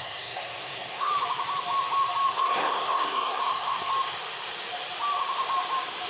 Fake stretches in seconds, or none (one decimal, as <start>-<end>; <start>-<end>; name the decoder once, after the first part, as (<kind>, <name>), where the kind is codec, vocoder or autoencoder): 0.0-1.1 (codec, SNAC); 2.3-3.9

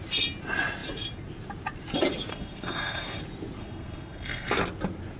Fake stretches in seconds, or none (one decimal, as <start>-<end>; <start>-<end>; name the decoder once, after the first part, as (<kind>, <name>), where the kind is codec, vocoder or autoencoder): 2.3-3.2 (codec, SNAC); 3.6-4.5

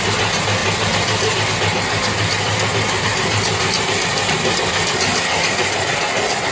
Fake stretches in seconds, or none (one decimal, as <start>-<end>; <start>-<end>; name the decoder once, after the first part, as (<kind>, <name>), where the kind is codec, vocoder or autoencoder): none

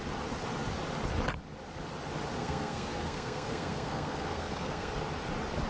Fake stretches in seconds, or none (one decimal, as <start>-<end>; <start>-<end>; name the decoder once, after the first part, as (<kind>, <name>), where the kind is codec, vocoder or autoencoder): 2.4-4.9 (codec, SNAC)

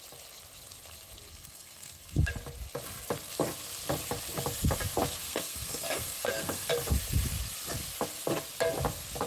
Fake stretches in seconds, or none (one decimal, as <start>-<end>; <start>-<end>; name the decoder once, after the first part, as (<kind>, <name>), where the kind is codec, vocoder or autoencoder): 1.3-2.3 (codec, SNAC); 5.2-6.7